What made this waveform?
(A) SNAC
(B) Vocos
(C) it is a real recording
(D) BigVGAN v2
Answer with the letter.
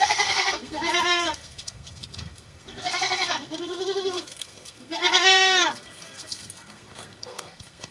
A